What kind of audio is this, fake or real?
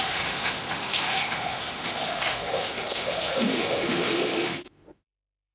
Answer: fake